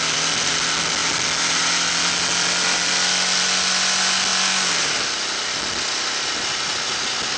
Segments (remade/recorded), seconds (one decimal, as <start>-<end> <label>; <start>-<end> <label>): 0.0-7.4 recorded

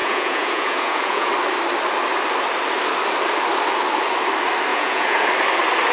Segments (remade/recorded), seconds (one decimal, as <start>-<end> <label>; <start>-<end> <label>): 0.0-1.3 remade; 1.3-4.7 recorded; 4.7-5.3 remade; 5.3-5.9 recorded

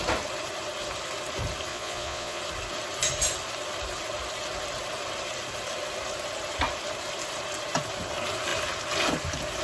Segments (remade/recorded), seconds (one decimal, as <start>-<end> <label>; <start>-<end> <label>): 0.0-1.7 recorded; 1.7-2.4 remade; 2.4-9.6 recorded

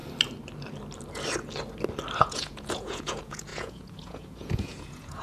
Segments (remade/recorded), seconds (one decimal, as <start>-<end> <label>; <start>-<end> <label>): 0.0-2.2 recorded; 2.2-5.2 remade

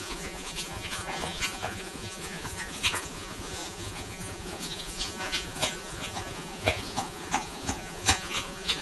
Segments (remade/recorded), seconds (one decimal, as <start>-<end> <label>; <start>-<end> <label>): 0.0-8.8 remade